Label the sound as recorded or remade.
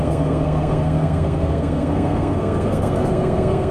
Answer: remade